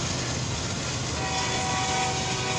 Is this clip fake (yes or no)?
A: no